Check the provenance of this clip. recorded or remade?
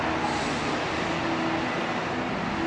recorded